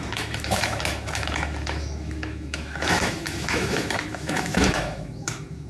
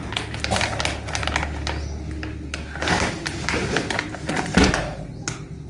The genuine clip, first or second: second